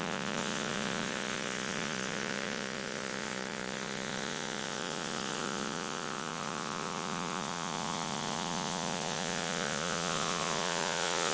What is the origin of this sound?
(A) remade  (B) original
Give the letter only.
A